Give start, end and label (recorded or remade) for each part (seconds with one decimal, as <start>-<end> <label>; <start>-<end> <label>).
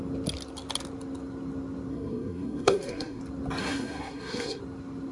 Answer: 0.0-1.9 recorded; 1.9-3.2 remade; 3.2-3.6 recorded; 3.6-4.6 remade; 4.6-5.1 recorded